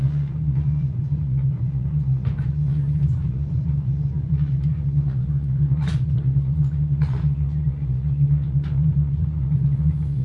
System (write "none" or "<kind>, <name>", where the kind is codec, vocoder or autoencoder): vocoder, Vocos